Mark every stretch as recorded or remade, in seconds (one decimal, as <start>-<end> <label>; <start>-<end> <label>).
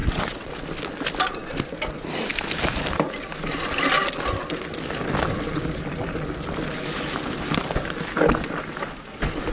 0.0-0.5 remade; 0.5-9.5 recorded